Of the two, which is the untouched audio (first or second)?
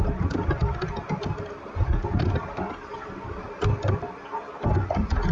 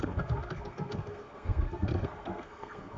first